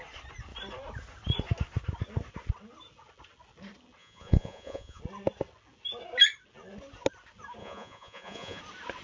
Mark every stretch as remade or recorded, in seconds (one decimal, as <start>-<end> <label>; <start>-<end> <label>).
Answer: 0.0-4.0 recorded; 4.0-5.0 remade; 5.0-7.6 recorded; 7.6-8.6 remade; 8.6-9.0 recorded